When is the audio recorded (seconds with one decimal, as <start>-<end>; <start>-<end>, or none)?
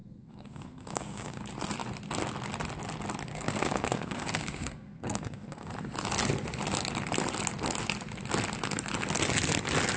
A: 1.4-3.3; 5.7-10.0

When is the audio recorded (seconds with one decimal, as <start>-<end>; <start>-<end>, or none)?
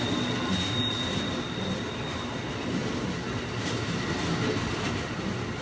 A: 0.0-5.6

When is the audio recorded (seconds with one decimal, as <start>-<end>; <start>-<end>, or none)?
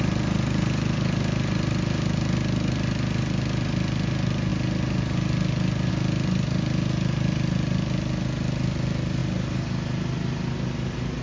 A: 0.0-11.2